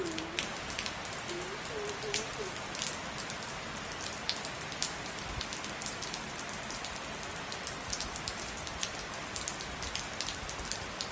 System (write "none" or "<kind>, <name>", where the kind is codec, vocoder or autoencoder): none